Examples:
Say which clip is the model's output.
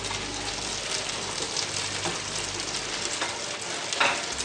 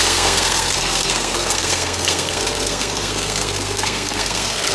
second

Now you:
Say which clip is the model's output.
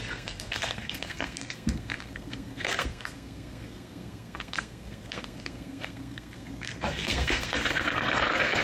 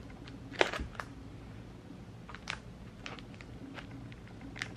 first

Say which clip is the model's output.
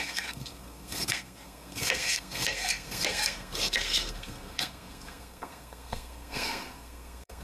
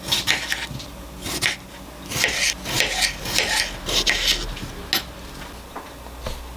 first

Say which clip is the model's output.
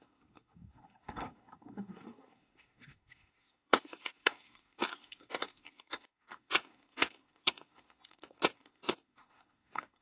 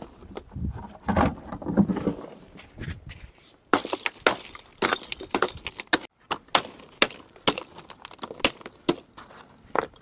first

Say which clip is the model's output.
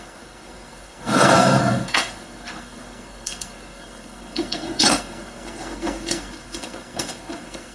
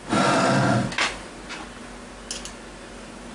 first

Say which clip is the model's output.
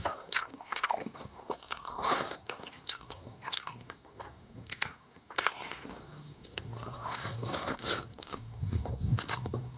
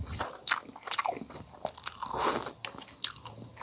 first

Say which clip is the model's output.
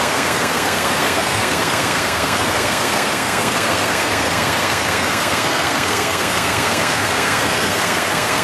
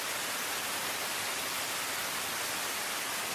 first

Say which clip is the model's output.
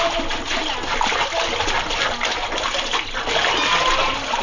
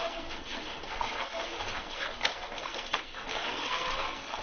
second